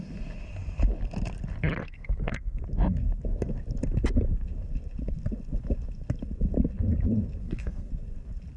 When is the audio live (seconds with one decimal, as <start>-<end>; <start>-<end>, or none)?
0.0-1.8; 2.6-7.4; 7.9-8.6